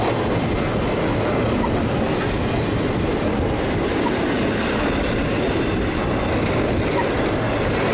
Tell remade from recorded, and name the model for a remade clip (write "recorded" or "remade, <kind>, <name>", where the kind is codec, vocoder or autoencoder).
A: recorded